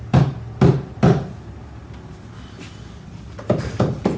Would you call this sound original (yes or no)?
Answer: yes